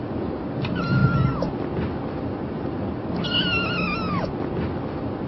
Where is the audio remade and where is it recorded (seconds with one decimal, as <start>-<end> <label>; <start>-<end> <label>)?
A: 0.0-5.3 recorded